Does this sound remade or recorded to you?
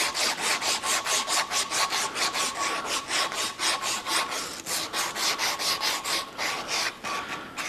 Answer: recorded